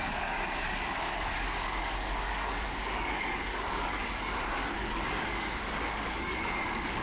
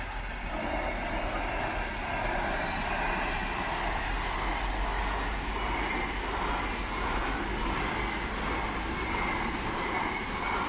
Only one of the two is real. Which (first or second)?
second